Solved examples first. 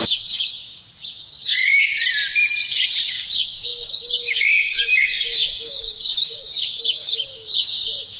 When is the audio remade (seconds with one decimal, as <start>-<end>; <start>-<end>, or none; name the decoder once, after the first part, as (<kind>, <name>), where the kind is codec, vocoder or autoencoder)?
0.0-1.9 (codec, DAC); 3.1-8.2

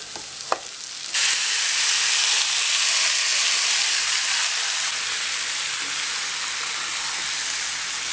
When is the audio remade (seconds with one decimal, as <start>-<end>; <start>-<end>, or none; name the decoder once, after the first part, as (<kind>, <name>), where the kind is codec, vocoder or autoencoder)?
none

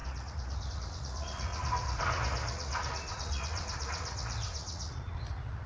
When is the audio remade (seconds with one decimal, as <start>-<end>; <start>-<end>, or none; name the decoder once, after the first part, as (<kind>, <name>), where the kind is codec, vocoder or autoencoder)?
0.0-5.7 (vocoder, Vocos)

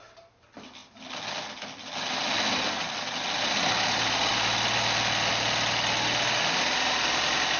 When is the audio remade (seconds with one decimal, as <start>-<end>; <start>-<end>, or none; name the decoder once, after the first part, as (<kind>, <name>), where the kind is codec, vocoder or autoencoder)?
none

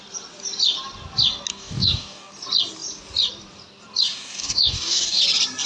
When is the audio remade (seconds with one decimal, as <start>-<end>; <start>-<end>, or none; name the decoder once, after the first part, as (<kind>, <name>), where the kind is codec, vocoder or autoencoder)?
1.5-2.3 (codec, DAC); 4.1-5.2

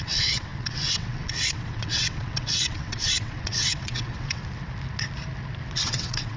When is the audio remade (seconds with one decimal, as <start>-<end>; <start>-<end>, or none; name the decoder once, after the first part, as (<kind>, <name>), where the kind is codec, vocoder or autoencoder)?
0.0-4.4 (vocoder, WaveNeXt); 5.7-6.4

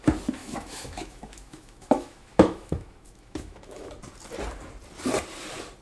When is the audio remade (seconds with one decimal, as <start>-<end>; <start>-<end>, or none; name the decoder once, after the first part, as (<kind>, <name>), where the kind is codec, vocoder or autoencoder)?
0.4-3.9 (autoencoder, DAC-VAE)